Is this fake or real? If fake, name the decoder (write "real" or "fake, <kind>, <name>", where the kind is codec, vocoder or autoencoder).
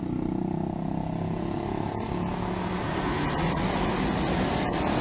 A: real